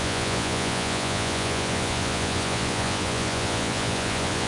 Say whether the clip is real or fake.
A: fake